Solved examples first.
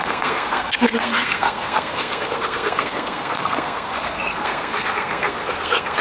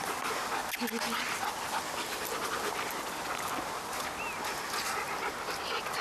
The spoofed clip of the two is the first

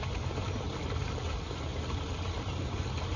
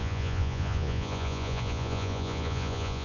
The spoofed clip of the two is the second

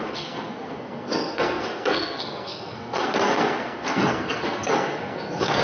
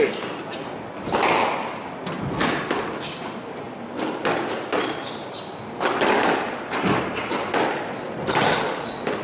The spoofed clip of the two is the first